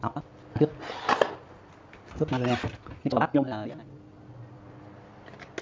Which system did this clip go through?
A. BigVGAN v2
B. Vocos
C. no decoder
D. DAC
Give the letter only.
C